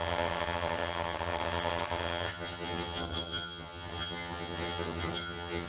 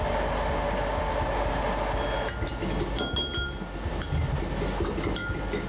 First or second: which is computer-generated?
first